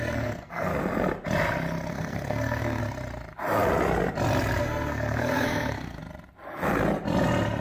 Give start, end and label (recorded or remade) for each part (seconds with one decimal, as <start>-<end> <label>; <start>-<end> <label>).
0.0-0.7 remade; 0.7-1.9 recorded; 1.9-2.8 remade; 2.8-4.6 recorded; 4.6-6.0 remade; 6.0-7.6 recorded